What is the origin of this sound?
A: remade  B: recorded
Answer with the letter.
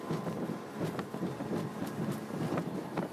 B